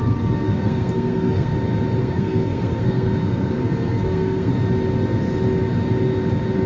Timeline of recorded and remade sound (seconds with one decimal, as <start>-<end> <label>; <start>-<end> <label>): 0.0-1.5 remade; 1.5-2.0 recorded; 2.0-4.5 remade; 4.5-6.7 recorded